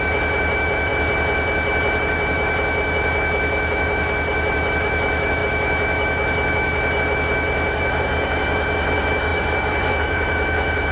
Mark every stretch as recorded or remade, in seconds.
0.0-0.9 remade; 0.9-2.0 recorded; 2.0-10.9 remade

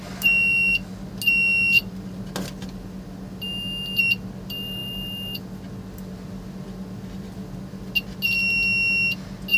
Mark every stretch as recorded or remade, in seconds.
0.0-9.6 recorded

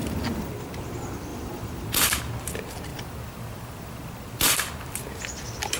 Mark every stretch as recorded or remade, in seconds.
0.0-0.6 remade; 0.6-1.3 recorded; 1.3-2.2 remade; 2.2-2.9 recorded; 2.9-4.7 remade; 4.7-5.8 recorded

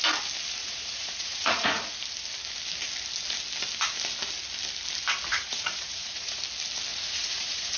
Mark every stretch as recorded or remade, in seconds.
0.0-0.6 recorded; 0.6-2.0 remade; 2.0-5.3 recorded; 5.3-6.4 remade; 6.4-6.9 recorded; 6.9-7.8 remade

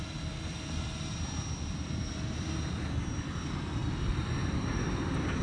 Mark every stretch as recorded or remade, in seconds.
0.0-3.8 recorded; 3.8-5.0 remade; 5.0-5.4 recorded

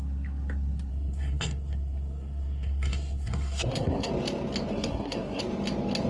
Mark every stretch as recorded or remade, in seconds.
0.0-0.9 recorded; 0.9-4.1 remade; 4.1-4.7 recorded; 4.7-5.4 remade; 5.4-6.1 recorded

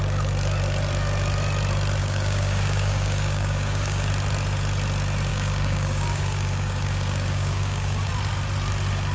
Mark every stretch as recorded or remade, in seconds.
0.0-2.0 recorded; 2.0-4.1 remade; 4.1-5.3 recorded; 5.3-8.1 remade; 8.1-9.1 recorded